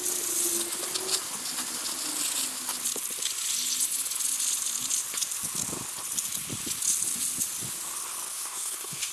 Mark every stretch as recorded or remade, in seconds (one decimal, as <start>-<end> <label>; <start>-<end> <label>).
0.0-8.3 recorded; 8.3-9.1 remade